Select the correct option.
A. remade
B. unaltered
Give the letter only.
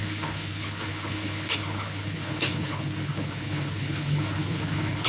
A